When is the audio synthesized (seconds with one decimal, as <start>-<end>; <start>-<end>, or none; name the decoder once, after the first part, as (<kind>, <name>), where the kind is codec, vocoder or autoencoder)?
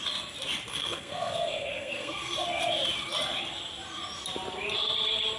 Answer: 0.7-2.6 (codec, SNAC)